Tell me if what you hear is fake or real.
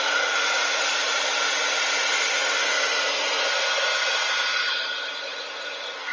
real